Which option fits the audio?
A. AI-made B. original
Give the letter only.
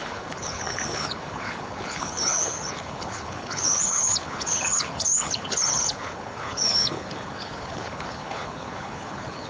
A